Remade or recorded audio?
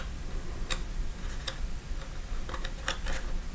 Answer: recorded